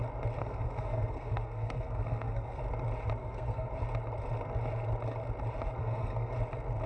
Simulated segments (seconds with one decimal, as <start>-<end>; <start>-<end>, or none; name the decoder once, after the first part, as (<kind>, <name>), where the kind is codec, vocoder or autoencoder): 0.4-2.6 (codec, SNAC); 3.2-3.7; 5.8-6.3